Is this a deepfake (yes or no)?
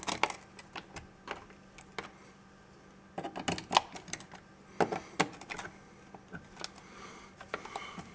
no